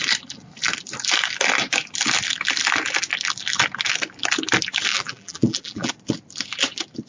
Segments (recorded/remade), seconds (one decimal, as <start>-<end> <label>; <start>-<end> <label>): 0.0-4.9 recorded; 4.9-5.9 remade; 5.9-7.1 recorded